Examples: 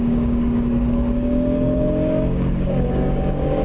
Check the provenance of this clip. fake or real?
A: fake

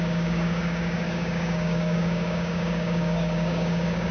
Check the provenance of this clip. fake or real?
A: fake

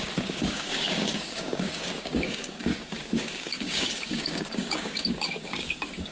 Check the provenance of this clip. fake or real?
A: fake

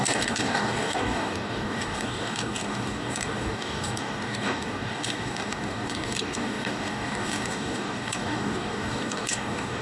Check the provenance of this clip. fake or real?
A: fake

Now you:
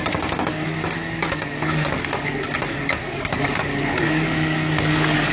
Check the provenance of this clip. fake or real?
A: fake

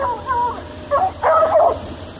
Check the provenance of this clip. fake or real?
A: real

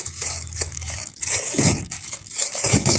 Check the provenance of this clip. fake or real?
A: fake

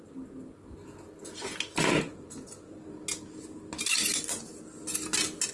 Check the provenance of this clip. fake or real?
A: real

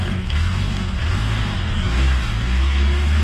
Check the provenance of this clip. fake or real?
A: fake